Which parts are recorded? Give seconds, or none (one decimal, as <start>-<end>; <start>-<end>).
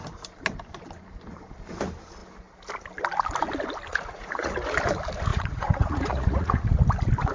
0.0-3.9; 4.5-5.3; 6.6-7.3